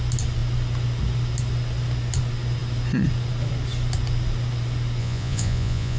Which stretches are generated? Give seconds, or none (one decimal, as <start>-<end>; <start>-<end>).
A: 5.0-6.0